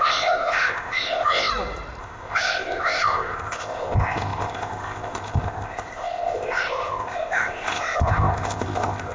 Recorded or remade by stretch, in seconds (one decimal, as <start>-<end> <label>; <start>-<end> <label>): 0.0-1.5 remade; 1.5-2.0 recorded; 2.0-9.1 remade